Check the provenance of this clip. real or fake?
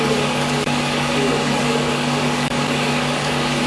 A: fake